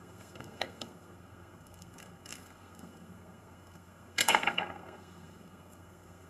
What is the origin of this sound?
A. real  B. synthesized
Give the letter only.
B